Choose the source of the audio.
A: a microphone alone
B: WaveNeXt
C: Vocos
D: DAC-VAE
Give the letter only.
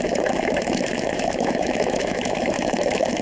D